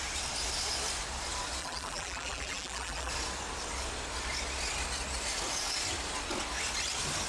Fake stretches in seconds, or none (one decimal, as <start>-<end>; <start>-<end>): 1.6-3.1